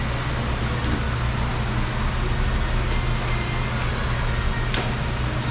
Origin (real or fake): real